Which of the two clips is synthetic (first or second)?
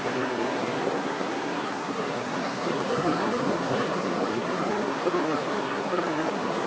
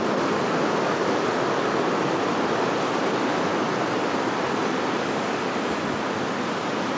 first